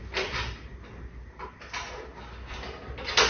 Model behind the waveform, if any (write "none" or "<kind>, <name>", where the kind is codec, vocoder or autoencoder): none